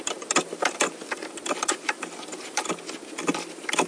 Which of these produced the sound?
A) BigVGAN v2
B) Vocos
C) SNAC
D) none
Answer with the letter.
D